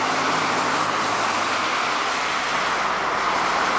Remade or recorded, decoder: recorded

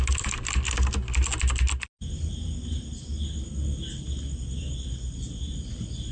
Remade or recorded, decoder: recorded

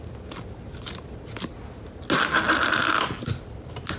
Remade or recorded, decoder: recorded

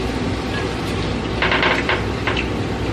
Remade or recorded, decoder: recorded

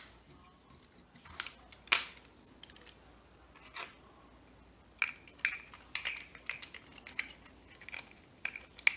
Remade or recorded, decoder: recorded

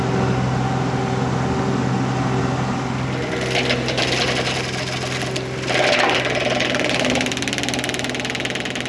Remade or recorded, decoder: recorded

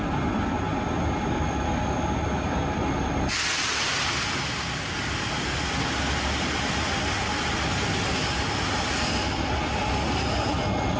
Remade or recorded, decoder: recorded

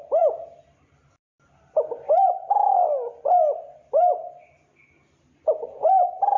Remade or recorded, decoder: recorded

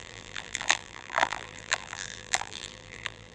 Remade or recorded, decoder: remade, vocoder, BigVGAN v2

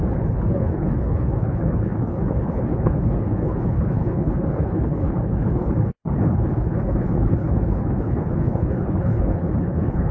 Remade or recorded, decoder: remade, codec, HILCodec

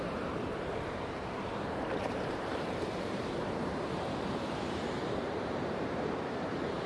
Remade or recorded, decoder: remade, vocoder, BigVGAN v2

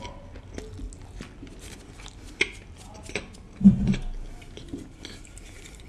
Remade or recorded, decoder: recorded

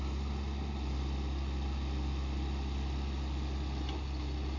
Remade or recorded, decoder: recorded